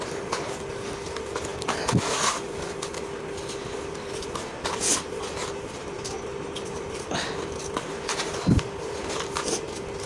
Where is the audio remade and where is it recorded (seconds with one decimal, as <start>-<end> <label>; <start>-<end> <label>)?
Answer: 0.0-10.1 recorded